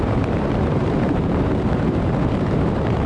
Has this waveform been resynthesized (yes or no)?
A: yes